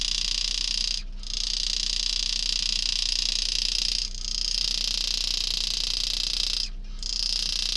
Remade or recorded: recorded